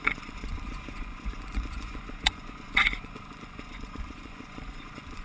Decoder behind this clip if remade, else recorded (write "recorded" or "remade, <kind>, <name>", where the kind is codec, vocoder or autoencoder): remade, vocoder, Vocos